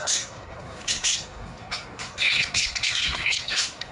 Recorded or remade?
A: remade